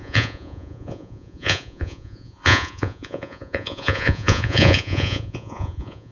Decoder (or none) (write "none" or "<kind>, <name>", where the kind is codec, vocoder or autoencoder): vocoder, Vocos